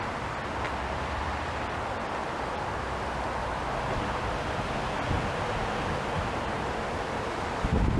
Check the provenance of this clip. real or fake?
real